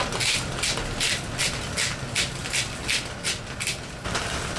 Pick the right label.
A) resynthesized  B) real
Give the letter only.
B